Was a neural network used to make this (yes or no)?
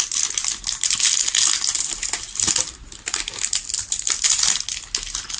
no